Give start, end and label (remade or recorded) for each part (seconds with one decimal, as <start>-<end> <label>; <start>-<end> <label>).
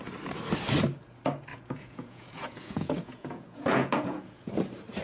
0.0-1.5 recorded; 1.5-4.5 remade; 4.5-5.0 recorded